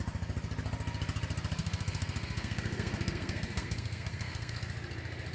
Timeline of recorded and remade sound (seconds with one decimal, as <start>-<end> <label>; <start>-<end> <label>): 0.0-1.6 recorded; 1.6-4.6 remade; 4.6-5.3 recorded